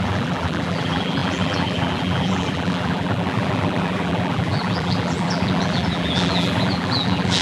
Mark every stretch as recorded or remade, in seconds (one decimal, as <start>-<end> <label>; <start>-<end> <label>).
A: 0.0-7.4 remade